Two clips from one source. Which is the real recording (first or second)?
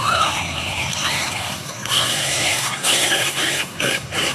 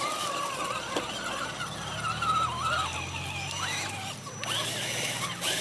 second